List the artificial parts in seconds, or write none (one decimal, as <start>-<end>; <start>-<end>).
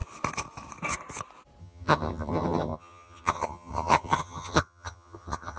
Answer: 1.6-5.6